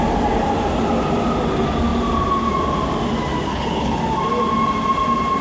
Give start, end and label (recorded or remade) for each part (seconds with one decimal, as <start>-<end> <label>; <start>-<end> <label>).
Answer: 0.0-3.5 recorded; 3.5-4.0 remade; 4.0-5.4 recorded